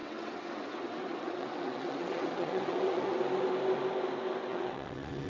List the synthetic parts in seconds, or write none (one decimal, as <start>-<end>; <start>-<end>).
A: 0.0-3.2; 4.5-5.3